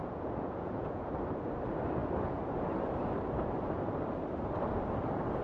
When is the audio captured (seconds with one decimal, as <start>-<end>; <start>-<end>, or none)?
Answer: 1.1-5.4

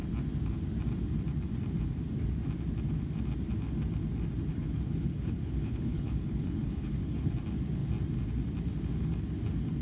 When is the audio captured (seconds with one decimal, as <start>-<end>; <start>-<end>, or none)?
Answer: 0.0-4.5; 7.3-9.8

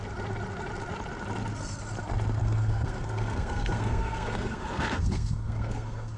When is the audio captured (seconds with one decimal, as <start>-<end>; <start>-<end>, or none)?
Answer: 0.0-2.4

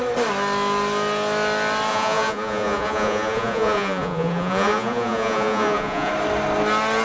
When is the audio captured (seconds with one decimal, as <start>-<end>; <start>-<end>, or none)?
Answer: 0.0-1.9; 6.1-7.0